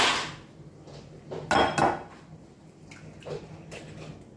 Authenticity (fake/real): real